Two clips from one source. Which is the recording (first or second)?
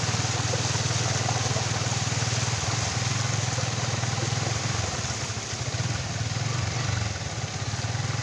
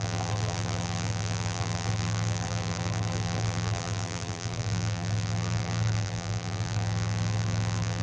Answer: first